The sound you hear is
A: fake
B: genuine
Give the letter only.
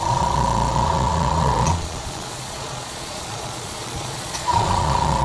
A